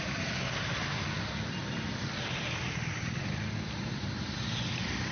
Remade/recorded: recorded